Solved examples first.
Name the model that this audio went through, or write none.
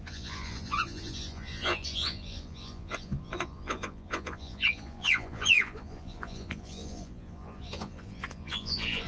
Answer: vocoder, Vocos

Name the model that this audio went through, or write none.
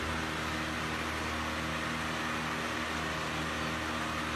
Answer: none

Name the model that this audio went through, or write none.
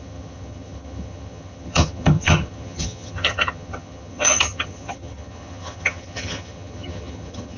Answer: vocoder, HiFi-GAN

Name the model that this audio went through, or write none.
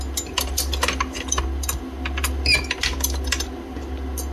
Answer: none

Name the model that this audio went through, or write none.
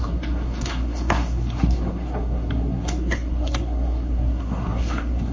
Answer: codec, SNAC